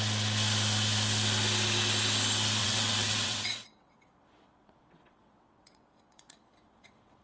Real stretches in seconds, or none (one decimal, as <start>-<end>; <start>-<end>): 0.0-2.6